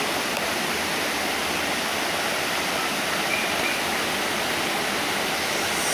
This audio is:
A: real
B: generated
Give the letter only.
A